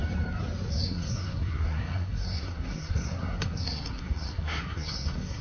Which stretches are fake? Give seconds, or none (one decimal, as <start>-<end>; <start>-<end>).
0.7-5.4